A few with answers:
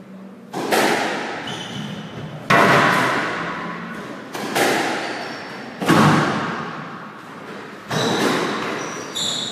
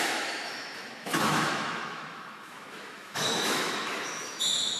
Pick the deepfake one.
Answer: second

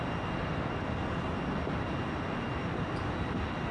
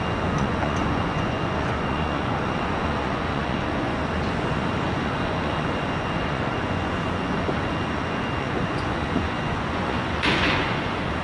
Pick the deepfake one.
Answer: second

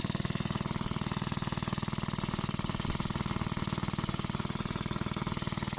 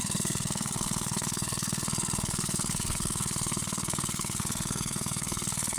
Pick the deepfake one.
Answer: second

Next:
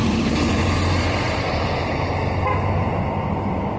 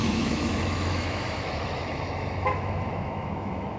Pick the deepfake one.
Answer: second